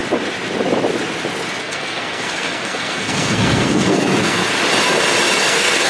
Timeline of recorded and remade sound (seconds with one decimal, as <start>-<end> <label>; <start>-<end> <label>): 0.0-1.6 recorded; 1.6-4.4 remade; 4.4-5.4 recorded; 5.4-5.9 remade